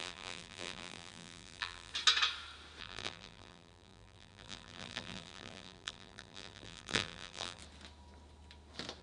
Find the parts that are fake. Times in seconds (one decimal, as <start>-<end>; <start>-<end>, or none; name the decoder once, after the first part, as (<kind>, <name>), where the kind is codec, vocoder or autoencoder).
0.0-1.9 (vocoder, BigVGAN v2); 2.8-7.6